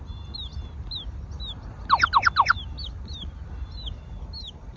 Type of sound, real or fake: real